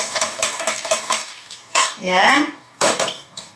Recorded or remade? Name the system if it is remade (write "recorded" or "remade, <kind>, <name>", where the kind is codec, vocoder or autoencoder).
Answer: remade, codec, DAC